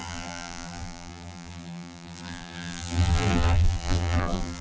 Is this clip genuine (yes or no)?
no